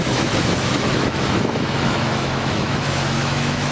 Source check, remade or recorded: remade